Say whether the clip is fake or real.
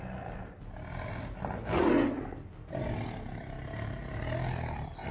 real